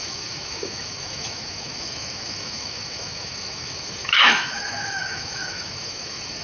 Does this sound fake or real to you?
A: fake